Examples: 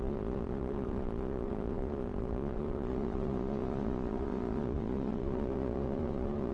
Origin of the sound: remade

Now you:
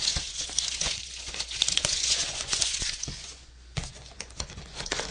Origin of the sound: remade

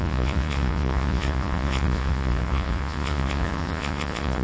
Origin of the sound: remade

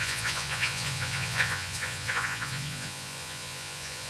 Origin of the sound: remade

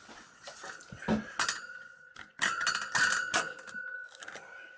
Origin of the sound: recorded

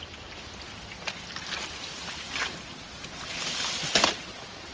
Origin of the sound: recorded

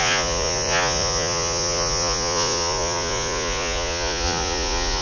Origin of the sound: remade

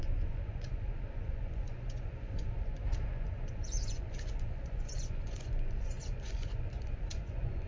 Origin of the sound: remade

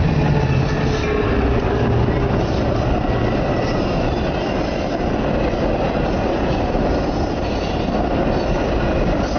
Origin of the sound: recorded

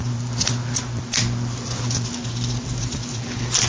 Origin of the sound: recorded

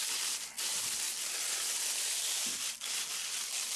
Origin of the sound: recorded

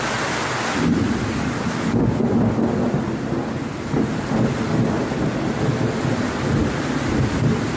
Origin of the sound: recorded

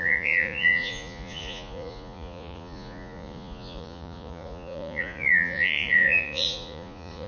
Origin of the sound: remade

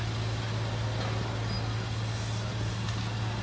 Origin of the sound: recorded